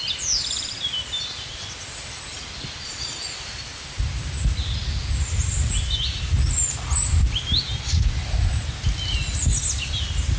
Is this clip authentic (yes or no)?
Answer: yes